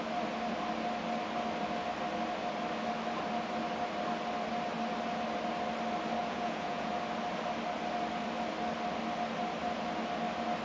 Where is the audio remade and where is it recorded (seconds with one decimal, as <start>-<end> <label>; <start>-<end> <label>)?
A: 0.0-6.2 recorded; 6.2-6.9 remade; 6.9-10.6 recorded